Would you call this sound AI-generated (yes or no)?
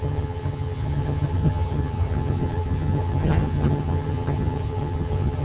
yes